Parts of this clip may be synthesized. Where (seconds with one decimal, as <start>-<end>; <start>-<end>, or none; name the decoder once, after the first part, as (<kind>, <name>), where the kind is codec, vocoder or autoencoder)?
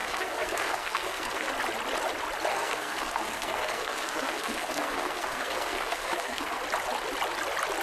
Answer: 0.0-1.5 (codec, SNAC); 2.5-6.6